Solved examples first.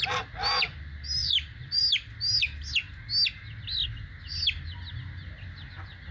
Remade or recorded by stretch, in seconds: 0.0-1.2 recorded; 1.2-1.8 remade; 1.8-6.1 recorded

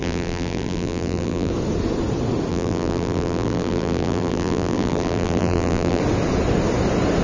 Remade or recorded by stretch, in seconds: 0.0-1.5 remade; 1.5-2.5 recorded; 2.5-6.0 remade; 6.0-7.2 recorded

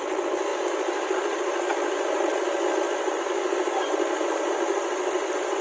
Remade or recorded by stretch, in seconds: 0.0-5.6 recorded

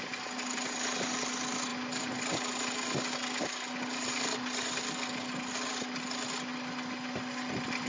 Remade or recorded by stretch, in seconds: 0.0-7.9 recorded

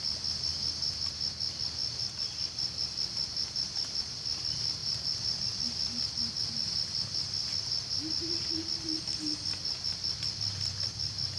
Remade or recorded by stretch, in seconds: 0.0-1.8 recorded; 1.8-4.0 remade; 4.0-4.8 recorded; 4.8-5.4 remade; 5.4-9.6 recorded; 9.6-10.3 remade; 10.3-11.4 recorded